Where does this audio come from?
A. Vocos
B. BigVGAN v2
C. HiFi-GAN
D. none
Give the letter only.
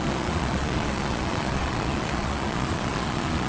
A